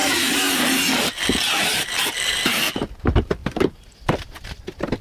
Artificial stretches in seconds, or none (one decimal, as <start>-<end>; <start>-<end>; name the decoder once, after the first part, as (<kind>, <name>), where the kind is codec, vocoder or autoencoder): 0.0-0.6 (vocoder, BigVGAN v2); 3.4-4.6